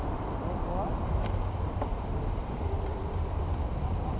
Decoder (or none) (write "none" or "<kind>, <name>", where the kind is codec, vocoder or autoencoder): none